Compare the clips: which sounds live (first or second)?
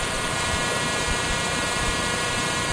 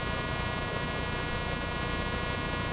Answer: second